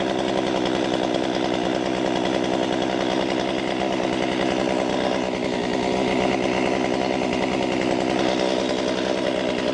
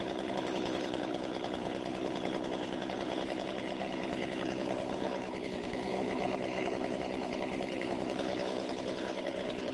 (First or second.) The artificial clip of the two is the second